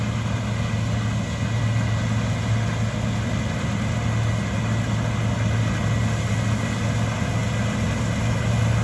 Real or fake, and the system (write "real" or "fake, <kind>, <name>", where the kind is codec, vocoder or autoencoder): real